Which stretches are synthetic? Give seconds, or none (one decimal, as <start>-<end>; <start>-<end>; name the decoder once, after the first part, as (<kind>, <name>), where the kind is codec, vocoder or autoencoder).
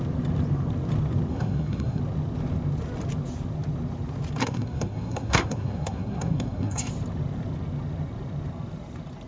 1.3-2.0 (codec, SNAC); 4.4-6.9